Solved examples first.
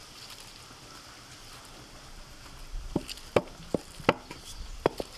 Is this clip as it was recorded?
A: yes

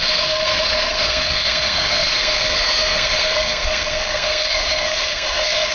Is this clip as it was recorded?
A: no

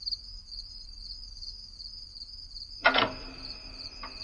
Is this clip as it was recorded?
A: yes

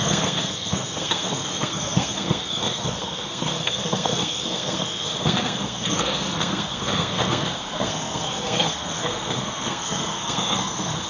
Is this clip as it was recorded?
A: no